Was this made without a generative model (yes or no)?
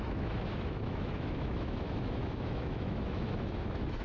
no